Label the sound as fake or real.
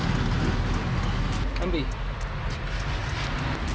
real